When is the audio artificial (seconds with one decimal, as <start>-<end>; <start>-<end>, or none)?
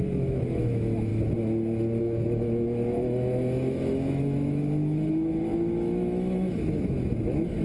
0.0-1.1; 2.0-7.6